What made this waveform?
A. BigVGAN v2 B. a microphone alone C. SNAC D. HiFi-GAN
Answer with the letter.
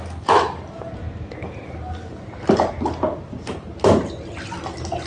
B